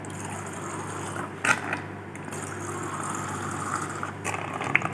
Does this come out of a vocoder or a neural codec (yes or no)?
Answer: no